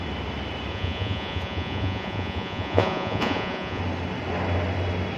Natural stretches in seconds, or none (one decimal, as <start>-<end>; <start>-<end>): 0.0-0.7; 3.8-5.2